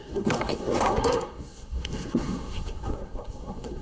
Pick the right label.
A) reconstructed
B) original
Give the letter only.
A